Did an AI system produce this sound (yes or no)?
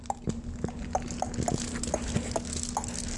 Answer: no